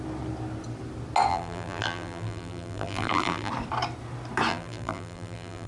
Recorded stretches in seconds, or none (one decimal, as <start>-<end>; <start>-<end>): 0.0-1.3; 3.5-4.5